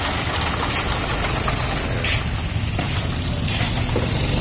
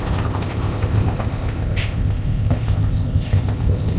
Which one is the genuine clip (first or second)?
first